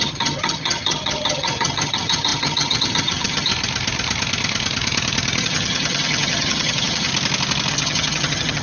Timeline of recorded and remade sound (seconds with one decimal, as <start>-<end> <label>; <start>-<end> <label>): 0.0-3.5 remade; 3.5-5.4 recorded; 5.4-7.1 remade; 7.1-7.7 recorded; 7.7-8.6 remade